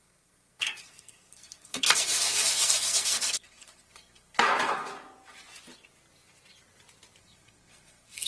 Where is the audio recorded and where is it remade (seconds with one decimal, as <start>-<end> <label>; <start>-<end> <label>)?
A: 0.0-4.9 remade; 4.9-7.2 recorded; 7.2-8.3 remade